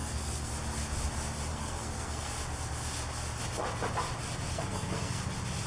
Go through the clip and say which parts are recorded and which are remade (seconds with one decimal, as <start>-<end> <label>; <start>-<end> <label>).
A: 0.0-0.5 remade; 0.5-1.5 recorded; 1.5-2.3 remade; 2.3-4.5 recorded; 4.5-5.2 remade; 5.2-5.7 recorded